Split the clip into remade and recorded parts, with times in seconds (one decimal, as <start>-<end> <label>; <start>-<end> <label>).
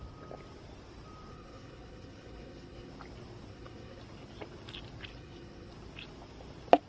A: 0.0-1.3 recorded; 1.3-2.9 remade; 2.9-3.5 recorded; 3.5-4.0 remade; 4.0-5.1 recorded; 5.1-5.7 remade; 5.7-6.9 recorded